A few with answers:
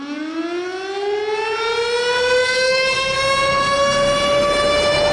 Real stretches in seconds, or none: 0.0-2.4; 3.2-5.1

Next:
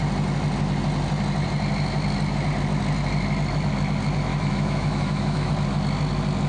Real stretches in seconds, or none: 0.0-4.3; 5.5-6.5

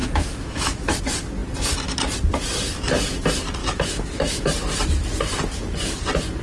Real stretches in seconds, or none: 1.0-3.6; 4.4-6.4

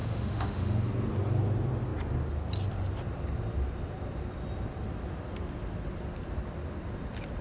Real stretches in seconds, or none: 0.9-7.4